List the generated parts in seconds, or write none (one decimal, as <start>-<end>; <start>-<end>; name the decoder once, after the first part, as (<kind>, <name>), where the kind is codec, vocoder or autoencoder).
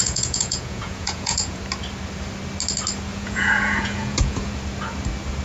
0.0-1.6 (vocoder, Vocos); 3.1-4.5